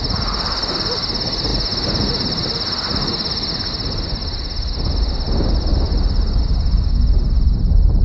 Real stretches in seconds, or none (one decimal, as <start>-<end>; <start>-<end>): 0.0-5.7; 6.4-8.0

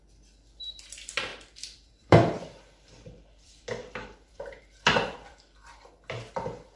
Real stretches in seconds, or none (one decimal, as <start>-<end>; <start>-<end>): none